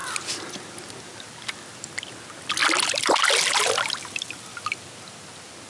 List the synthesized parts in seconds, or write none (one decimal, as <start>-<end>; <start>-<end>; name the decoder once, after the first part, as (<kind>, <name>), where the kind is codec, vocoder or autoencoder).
none